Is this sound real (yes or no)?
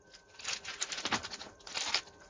yes